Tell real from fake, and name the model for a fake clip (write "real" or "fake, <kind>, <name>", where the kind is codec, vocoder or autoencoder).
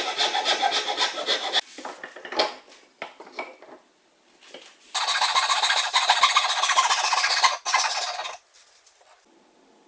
real